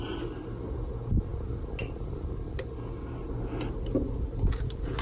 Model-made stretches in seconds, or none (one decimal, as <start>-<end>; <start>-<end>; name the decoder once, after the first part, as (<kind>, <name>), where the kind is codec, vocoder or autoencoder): none